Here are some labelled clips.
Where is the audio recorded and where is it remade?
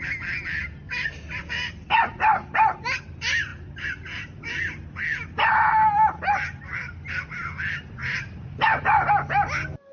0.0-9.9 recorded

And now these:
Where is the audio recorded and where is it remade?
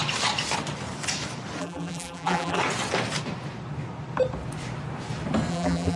0.0-1.6 recorded; 1.6-2.6 remade; 2.6-5.5 recorded; 5.5-6.0 remade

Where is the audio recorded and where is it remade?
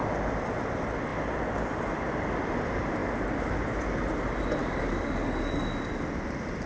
0.0-4.6 recorded; 4.6-5.6 remade; 5.6-6.7 recorded